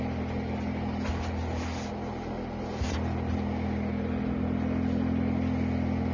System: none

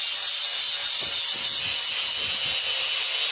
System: none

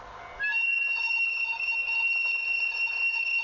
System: none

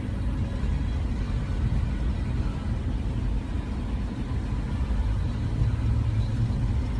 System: none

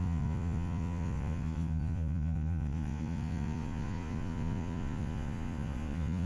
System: vocoder, Vocos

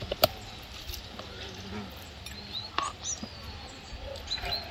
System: none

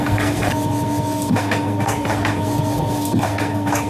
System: codec, SNAC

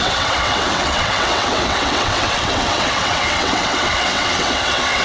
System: vocoder, WaveNeXt